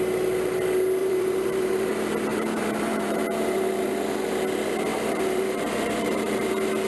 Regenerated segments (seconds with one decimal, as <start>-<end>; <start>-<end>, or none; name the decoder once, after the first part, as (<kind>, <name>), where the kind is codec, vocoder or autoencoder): 1.0-1.9 (vocoder, BigVGAN v2); 2.3-3.9; 4.9-6.5